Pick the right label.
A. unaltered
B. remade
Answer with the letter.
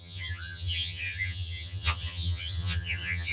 B